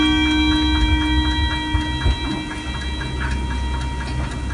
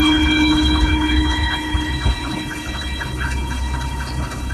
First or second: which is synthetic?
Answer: second